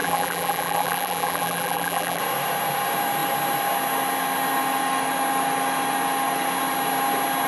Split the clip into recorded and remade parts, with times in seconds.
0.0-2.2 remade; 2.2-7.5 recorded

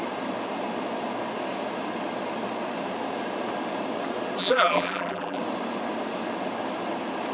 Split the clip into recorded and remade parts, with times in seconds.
0.0-4.4 recorded; 4.4-5.4 remade; 5.4-7.3 recorded

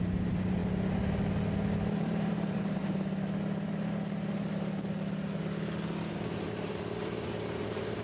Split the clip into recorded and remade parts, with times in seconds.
0.0-0.6 remade; 0.6-2.0 recorded; 2.0-2.8 remade; 2.8-6.1 recorded; 6.1-8.0 remade